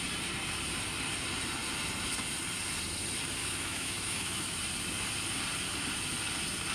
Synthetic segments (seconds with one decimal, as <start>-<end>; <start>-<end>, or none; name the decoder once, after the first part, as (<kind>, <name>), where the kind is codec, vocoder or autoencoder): 3.4-4.6 (autoencoder, DAC-VAE)